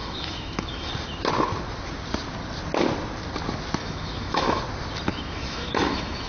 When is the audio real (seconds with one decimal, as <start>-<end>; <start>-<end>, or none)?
0.9-3.8; 4.6-5.1